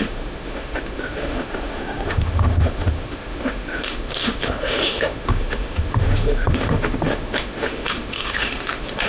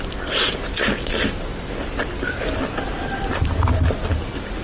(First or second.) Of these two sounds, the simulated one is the first